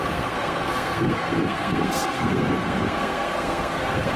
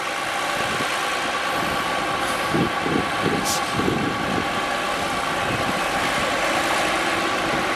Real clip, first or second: second